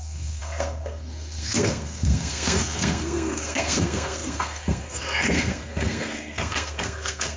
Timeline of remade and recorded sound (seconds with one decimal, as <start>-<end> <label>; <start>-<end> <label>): 0.0-7.4 remade